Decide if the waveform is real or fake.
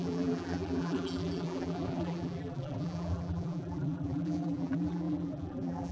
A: fake